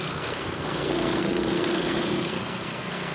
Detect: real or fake fake